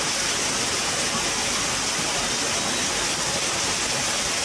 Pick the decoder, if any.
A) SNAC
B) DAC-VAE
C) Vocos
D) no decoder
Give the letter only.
D